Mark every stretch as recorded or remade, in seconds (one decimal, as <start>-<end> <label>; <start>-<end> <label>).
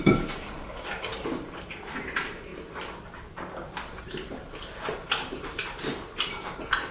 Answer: 0.0-2.5 remade; 2.5-4.0 recorded; 4.0-6.9 remade